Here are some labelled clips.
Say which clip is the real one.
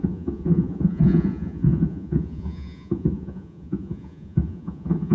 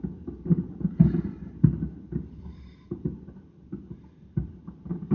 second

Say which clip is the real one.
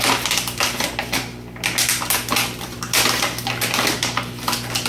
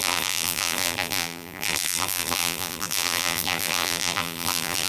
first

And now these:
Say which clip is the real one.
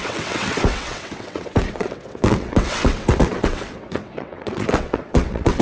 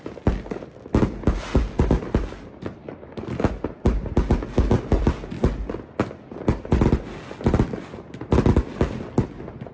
second